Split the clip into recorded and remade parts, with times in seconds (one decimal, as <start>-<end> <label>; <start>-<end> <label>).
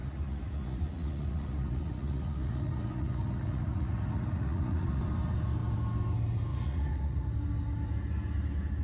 0.0-5.0 remade; 5.0-6.5 recorded; 6.5-7.3 remade; 7.3-8.8 recorded